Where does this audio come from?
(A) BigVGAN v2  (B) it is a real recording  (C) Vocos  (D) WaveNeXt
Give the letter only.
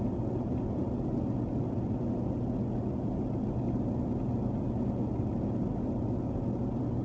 B